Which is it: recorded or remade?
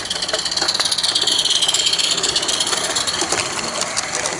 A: recorded